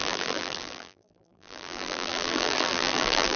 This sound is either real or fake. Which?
fake